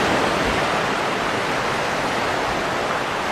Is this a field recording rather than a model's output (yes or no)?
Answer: yes